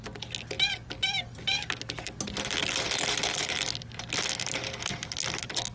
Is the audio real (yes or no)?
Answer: yes